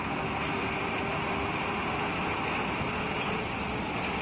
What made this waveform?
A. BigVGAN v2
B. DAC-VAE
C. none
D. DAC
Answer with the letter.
C